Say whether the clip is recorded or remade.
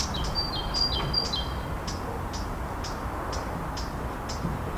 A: recorded